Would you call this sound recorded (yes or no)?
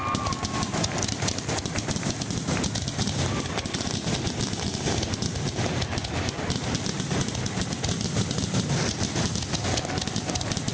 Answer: yes